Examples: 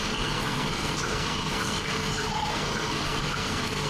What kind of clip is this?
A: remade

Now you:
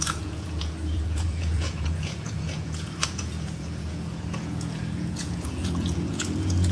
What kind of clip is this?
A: remade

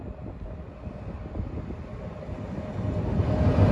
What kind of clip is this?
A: recorded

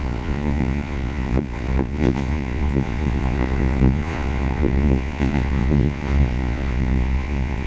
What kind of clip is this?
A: remade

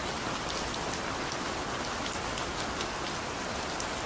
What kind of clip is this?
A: recorded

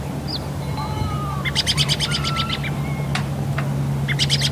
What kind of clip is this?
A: recorded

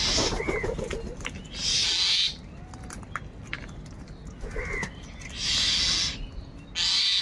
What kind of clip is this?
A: recorded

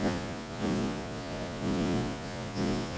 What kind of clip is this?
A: remade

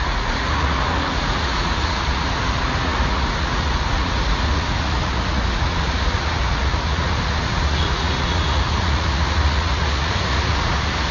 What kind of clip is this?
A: remade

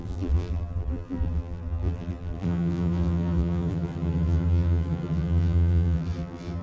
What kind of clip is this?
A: remade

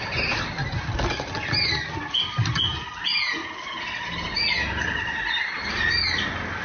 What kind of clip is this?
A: recorded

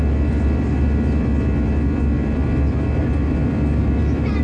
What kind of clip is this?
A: recorded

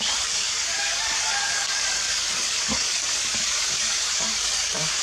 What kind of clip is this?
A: remade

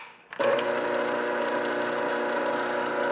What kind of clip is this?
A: recorded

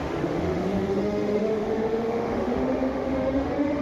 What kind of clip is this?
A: remade